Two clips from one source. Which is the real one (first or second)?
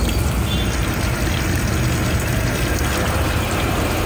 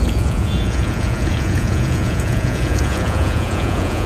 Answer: first